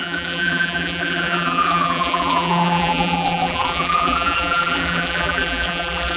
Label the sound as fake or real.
fake